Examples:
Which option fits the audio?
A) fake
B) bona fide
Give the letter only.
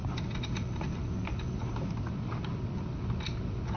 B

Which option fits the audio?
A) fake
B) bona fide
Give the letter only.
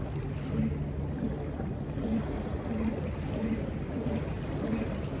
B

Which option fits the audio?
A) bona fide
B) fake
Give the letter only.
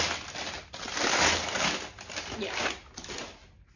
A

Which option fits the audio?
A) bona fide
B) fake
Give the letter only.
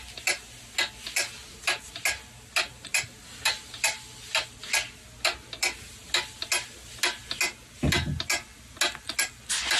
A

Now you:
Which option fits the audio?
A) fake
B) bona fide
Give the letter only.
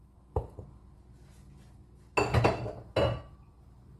B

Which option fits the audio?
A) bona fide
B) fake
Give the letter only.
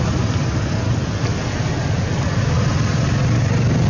A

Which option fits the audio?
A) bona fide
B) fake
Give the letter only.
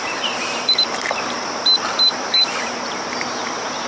B